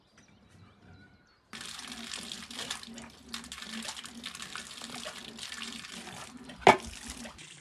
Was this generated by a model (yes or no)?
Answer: no